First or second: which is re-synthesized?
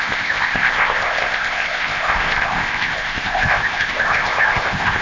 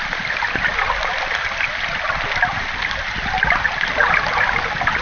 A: first